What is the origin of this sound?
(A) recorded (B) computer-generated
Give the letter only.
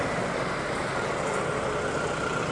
A